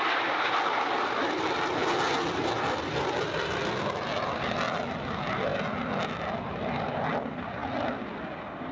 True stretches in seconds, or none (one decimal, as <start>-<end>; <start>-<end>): 0.0-8.7